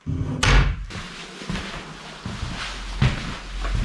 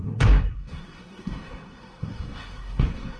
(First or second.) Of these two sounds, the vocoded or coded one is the second